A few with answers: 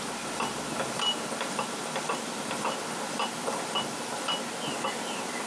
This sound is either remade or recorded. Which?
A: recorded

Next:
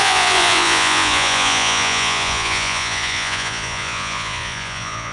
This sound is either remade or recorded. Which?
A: remade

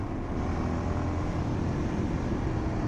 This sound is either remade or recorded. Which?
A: recorded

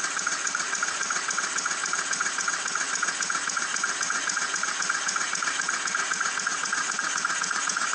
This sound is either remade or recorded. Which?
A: remade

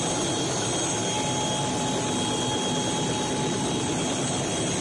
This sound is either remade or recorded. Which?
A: recorded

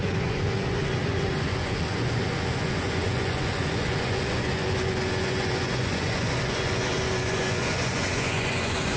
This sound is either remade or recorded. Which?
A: remade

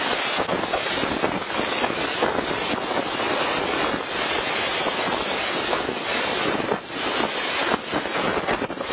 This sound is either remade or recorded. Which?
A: recorded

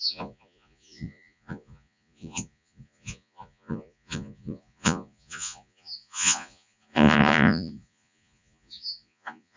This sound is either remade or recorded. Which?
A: remade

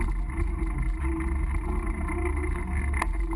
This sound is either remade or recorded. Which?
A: recorded